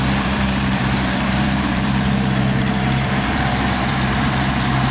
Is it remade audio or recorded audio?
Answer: remade